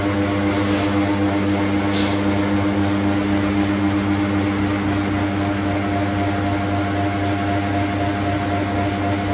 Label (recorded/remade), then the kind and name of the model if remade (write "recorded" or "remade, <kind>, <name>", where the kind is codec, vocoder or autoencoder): recorded